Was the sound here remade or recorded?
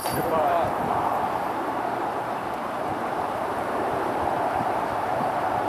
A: remade